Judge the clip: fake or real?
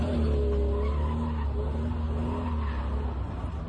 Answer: real